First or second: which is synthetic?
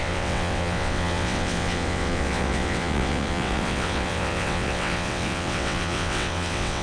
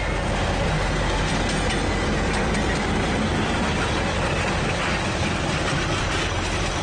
first